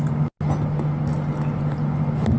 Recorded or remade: recorded